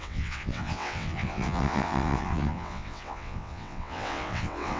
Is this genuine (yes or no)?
no